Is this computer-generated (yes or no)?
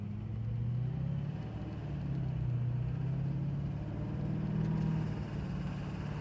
no